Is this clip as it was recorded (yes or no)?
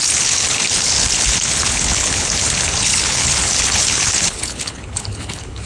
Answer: no